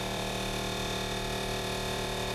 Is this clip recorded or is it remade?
remade